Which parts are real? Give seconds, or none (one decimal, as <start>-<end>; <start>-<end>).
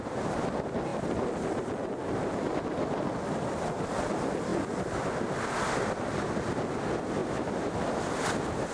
0.0-8.7